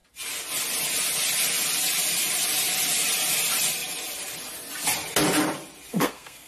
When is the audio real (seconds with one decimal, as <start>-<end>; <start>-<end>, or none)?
0.0-5.9